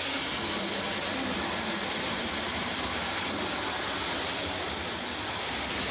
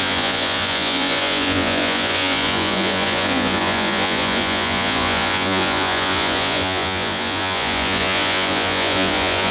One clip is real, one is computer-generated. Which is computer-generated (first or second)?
second